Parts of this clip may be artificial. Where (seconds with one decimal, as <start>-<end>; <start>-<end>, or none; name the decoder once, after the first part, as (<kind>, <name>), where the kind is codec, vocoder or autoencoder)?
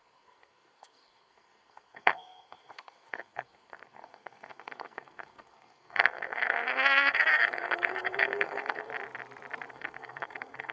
0.0-8.9 (codec, SNAC); 9.7-10.7